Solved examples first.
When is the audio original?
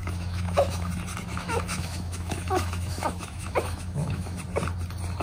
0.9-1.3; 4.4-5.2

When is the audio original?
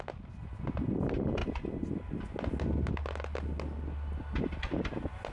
0.0-5.3